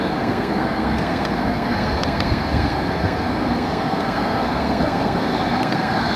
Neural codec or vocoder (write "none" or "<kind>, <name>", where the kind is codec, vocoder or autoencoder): codec, SNAC